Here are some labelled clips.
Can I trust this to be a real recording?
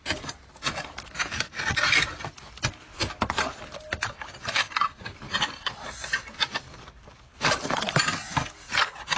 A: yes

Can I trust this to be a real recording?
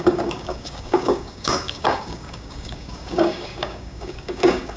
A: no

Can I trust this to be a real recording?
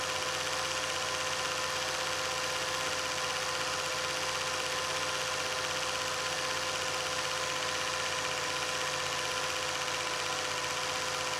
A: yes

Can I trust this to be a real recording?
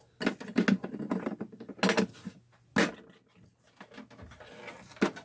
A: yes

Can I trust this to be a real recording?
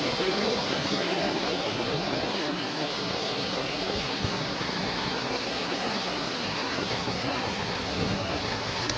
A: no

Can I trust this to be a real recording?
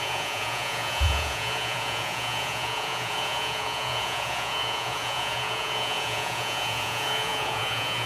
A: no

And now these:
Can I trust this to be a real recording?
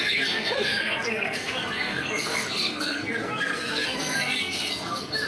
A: no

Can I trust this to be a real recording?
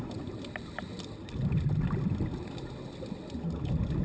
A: yes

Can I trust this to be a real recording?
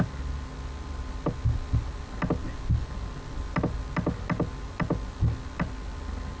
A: yes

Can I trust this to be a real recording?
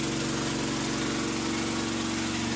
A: yes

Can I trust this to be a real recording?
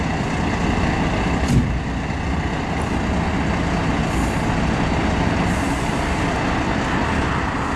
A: yes